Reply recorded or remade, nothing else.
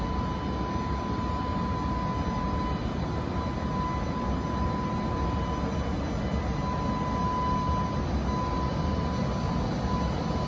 recorded